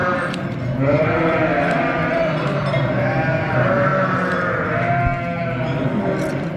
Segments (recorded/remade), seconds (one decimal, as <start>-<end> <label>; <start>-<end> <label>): 0.0-2.6 remade; 2.6-6.6 recorded